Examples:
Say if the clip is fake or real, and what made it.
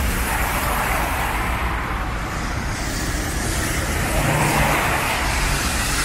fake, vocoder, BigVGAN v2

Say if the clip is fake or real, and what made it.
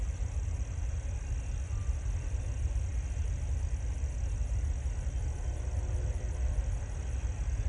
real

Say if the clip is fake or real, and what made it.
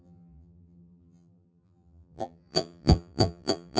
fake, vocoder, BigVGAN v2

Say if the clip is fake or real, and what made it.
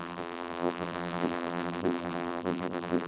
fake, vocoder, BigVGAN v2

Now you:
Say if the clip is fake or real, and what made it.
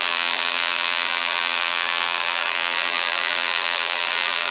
fake, vocoder, BigVGAN v2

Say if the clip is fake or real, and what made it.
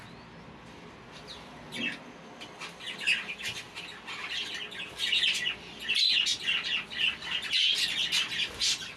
real